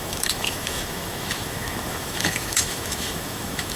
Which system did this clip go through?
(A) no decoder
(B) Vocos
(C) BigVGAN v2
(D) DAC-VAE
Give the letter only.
D